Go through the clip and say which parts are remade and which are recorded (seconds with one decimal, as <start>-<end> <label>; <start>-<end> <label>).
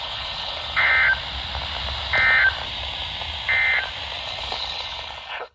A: 0.0-0.9 remade; 0.9-4.2 recorded; 4.2-5.5 remade